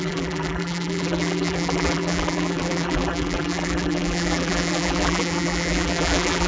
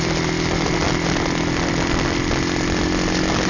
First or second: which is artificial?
first